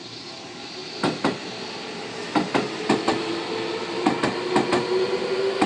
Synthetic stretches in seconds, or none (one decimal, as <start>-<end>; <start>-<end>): none